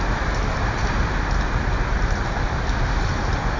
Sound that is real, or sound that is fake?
fake